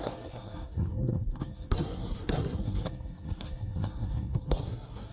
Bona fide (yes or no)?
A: no